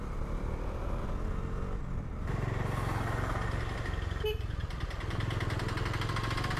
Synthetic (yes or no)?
no